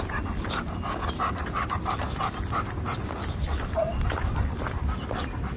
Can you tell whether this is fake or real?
real